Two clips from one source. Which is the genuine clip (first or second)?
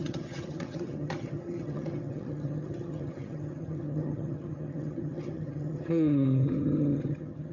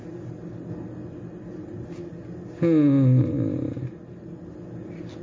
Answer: second